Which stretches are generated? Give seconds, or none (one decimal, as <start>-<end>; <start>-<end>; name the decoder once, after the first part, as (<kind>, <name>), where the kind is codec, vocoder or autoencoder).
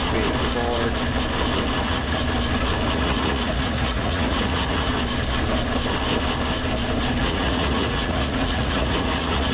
1.8-2.2 (vocoder, Vocos); 2.9-4.9; 7.2-9.5